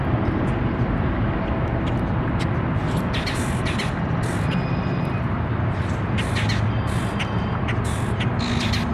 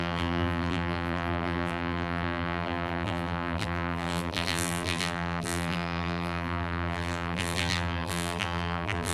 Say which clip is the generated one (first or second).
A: second